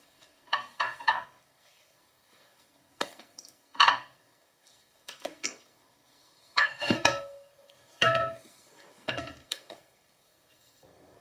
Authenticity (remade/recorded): remade